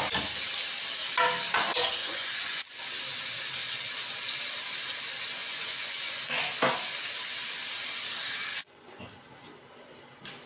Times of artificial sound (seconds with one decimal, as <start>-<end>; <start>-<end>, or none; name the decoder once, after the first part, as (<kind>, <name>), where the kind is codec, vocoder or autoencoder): 2.0-2.8 (vocoder, Vocos); 5.4-6.4; 8.5-9.2